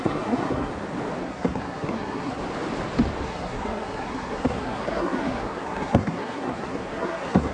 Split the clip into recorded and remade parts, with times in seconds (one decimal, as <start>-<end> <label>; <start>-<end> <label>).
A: 0.0-0.7 remade; 0.7-1.2 recorded; 1.2-2.4 remade; 2.4-3.2 recorded; 3.2-7.5 remade